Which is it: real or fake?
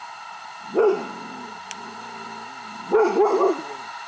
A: real